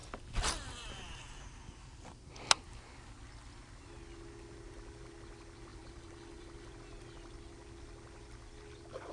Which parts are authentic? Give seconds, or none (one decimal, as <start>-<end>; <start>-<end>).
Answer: 2.3-5.7; 6.7-9.1